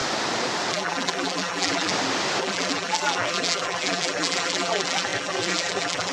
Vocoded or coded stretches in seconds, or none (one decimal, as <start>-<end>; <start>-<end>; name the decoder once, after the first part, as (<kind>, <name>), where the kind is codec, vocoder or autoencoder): 0.7-1.9 (vocoder, BigVGAN v2); 2.4-6.1